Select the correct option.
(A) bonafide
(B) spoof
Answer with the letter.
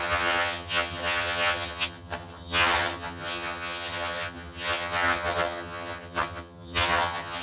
B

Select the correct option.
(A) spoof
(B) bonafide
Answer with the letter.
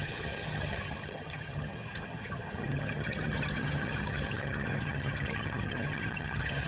A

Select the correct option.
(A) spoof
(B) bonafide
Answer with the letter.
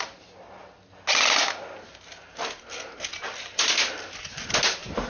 B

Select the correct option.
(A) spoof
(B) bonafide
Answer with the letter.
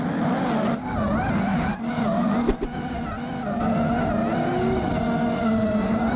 B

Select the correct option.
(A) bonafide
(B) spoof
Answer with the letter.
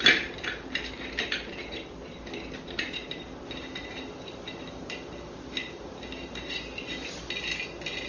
A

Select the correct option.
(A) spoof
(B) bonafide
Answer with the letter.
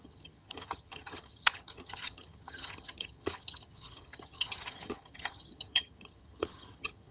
A